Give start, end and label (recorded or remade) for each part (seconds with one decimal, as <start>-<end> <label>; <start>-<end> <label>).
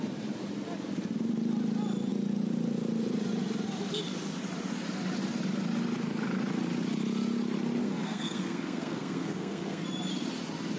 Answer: 0.0-7.8 recorded; 7.8-9.8 remade; 9.8-10.8 recorded